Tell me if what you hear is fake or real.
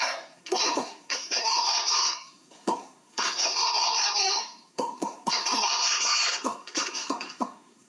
fake